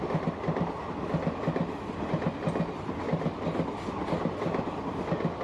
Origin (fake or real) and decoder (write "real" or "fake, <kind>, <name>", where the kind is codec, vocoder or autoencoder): real